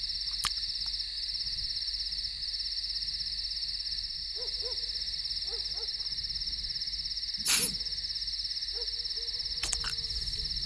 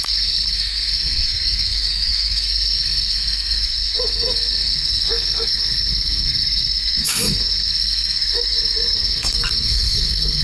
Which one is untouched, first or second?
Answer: first